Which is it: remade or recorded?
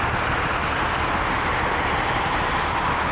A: recorded